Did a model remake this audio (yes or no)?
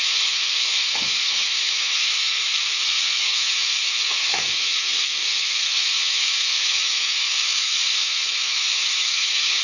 yes